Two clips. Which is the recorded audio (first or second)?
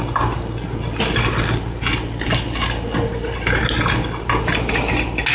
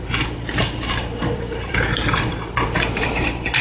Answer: first